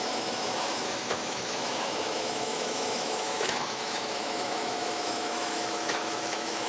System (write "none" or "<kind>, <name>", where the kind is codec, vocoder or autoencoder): autoencoder, DAC-VAE